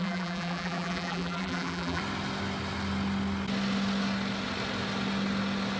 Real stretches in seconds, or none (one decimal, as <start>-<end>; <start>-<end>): 2.0-5.8